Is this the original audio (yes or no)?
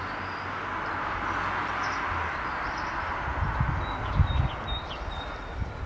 yes